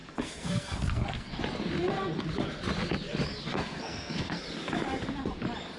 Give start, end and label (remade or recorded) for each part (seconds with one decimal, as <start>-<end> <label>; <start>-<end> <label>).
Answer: 0.0-1.4 remade; 1.4-3.5 recorded; 3.5-4.4 remade; 4.4-5.8 recorded